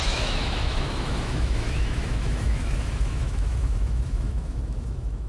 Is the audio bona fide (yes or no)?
no